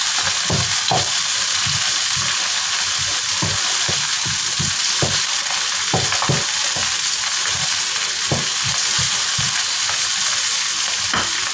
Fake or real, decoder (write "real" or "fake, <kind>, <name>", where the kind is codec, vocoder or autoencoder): real